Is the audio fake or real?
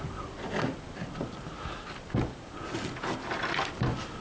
real